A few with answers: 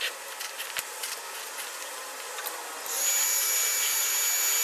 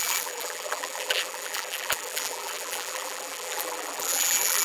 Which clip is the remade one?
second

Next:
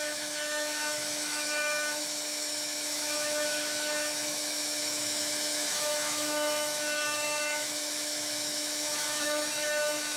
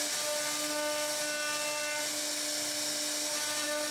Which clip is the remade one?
first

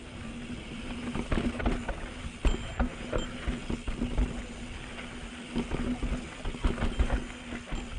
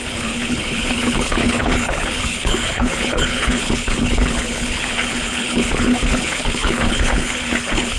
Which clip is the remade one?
second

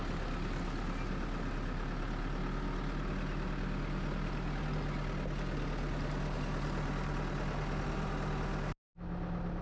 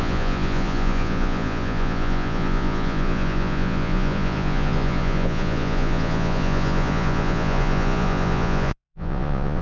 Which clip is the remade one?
second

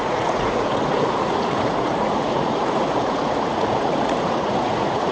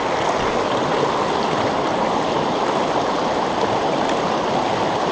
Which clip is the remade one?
first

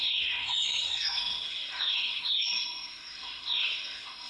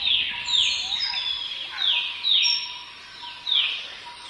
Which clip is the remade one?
first